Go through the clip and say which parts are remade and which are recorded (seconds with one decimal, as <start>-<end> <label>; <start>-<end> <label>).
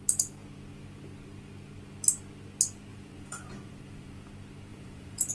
0.0-2.9 recorded; 2.9-4.3 remade; 4.3-4.7 recorded; 4.7-5.3 remade